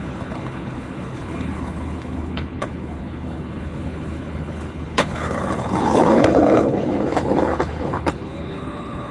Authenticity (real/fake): fake